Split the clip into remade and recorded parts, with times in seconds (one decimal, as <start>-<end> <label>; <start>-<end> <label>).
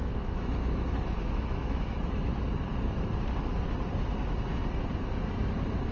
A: 0.0-2.1 remade; 2.1-5.9 recorded